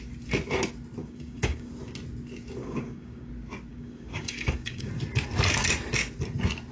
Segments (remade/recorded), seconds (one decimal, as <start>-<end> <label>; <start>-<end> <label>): 0.0-1.0 recorded; 1.0-1.7 remade; 1.7-2.6 recorded; 2.6-3.3 remade; 3.3-3.7 recorded; 3.7-4.9 remade; 4.9-6.7 recorded

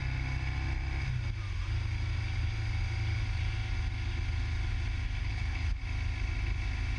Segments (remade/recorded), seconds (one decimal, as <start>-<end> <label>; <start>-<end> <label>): 0.0-5.2 recorded; 5.2-5.8 remade; 5.8-7.0 recorded

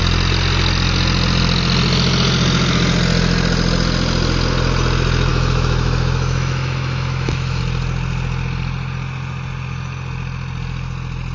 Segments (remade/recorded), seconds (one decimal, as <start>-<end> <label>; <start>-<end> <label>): 0.0-5.3 recorded; 5.3-7.6 remade; 7.6-11.3 recorded

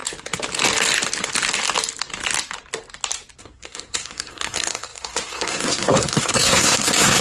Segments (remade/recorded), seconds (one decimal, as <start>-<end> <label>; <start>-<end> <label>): 0.0-3.4 recorded; 3.4-7.2 remade